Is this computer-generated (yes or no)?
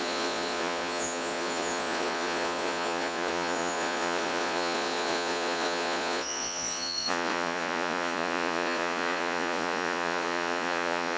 yes